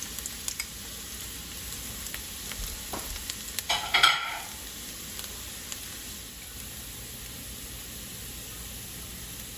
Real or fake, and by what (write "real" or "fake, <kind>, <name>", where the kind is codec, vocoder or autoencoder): real